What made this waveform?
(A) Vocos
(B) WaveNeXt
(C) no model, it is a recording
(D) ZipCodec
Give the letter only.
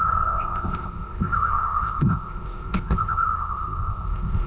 D